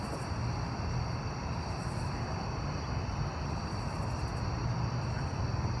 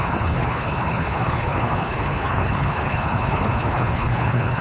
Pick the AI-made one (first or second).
second